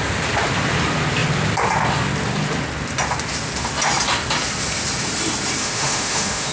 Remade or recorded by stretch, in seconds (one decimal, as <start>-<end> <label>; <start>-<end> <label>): 0.0-5.6 recorded; 5.6-6.5 remade